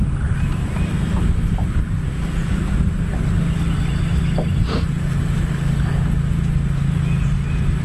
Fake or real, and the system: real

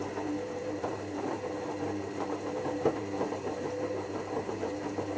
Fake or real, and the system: fake, vocoder, BigVGAN v2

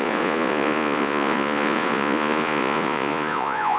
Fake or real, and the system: fake, vocoder, Vocos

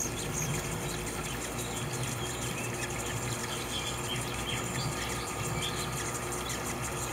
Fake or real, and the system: real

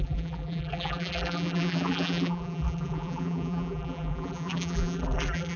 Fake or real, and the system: fake, vocoder, BigVGAN v2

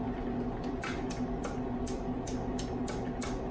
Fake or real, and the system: real